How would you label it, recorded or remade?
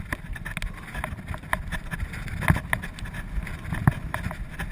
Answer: recorded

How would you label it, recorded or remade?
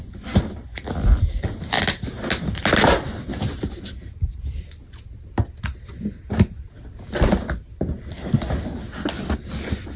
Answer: recorded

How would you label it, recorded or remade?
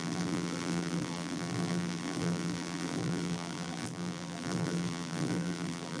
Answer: remade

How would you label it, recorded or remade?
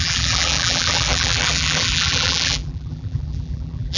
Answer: remade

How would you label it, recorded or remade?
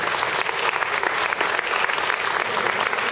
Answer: recorded